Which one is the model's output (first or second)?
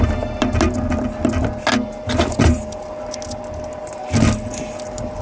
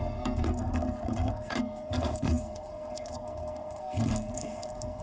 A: second